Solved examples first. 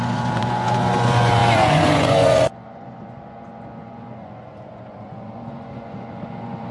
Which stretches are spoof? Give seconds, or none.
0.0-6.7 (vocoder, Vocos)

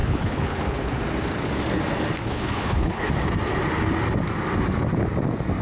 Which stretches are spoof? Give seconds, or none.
0.0-1.0 (codec, HILCodec); 2.2-3.1